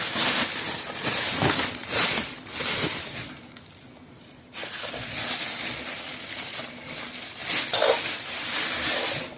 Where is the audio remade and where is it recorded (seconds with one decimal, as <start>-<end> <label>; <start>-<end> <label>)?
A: 0.0-9.4 recorded